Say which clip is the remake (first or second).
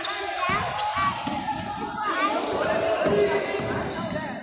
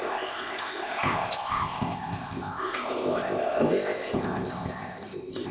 second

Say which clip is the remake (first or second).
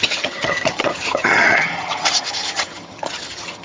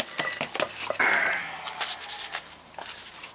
first